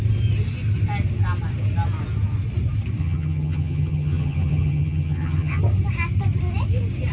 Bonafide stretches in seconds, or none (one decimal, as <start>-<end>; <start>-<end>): 0.0-3.0; 5.6-7.1